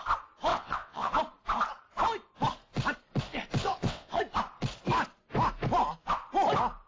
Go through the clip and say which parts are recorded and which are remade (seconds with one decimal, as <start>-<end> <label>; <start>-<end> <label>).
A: 0.0-0.5 recorded; 0.5-1.1 remade; 1.1-3.6 recorded; 3.6-4.2 remade; 4.2-6.9 recorded